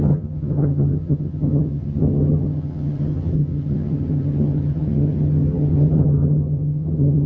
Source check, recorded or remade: remade